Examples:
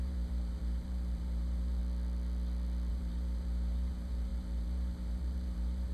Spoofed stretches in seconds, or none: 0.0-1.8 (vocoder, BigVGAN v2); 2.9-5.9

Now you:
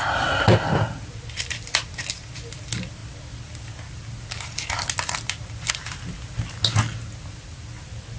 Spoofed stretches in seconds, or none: none